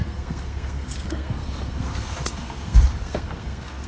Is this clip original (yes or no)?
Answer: no